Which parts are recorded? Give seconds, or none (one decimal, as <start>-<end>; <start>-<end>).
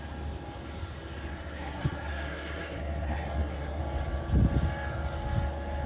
0.0-1.3; 3.8-5.9